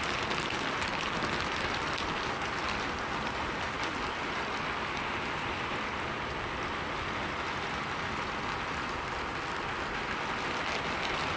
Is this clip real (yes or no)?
yes